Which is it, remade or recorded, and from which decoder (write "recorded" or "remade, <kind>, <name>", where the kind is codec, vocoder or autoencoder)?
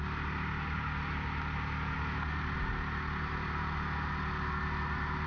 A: recorded